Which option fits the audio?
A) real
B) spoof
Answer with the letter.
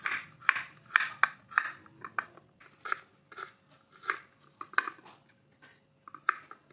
A